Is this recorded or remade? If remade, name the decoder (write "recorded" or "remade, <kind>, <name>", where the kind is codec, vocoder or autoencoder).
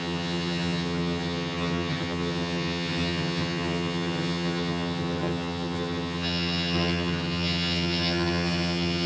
remade, vocoder, HiFi-GAN